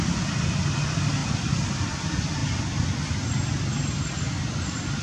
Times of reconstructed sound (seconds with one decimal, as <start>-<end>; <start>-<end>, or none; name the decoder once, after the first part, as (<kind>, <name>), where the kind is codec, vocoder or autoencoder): none